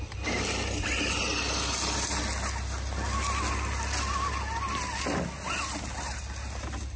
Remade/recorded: recorded